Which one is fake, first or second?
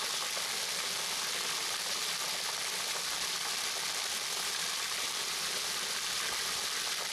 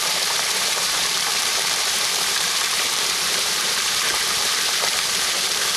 second